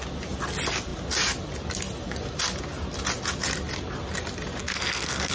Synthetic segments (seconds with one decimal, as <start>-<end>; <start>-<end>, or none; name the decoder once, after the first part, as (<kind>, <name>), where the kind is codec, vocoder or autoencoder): 4.6-5.3 (codec, SNAC)